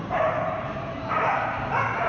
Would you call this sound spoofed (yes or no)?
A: yes